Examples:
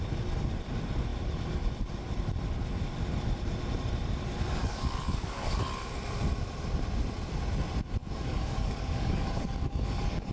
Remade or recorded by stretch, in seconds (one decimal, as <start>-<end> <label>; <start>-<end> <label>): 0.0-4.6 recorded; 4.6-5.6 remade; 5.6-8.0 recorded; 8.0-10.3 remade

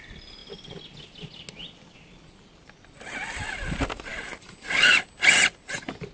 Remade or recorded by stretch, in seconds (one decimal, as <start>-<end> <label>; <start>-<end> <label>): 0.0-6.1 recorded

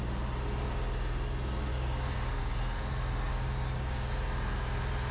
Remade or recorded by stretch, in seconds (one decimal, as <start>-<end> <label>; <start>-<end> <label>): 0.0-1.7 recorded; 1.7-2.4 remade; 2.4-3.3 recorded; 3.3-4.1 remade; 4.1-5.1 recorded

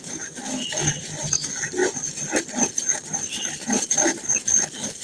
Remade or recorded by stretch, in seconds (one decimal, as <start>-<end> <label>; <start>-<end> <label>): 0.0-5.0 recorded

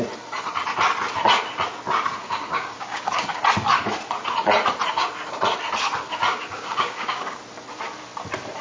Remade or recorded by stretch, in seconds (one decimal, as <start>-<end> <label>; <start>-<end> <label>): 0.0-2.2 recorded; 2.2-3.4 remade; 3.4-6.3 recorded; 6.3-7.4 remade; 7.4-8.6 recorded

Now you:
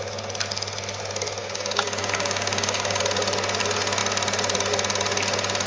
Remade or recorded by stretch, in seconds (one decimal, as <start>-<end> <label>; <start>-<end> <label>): 0.0-1.4 recorded; 1.4-3.0 remade; 3.0-5.7 recorded